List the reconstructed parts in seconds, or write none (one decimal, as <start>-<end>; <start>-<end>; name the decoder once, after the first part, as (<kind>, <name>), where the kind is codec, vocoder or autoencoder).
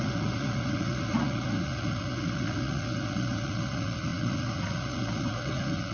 0.0-5.9 (vocoder, Vocos)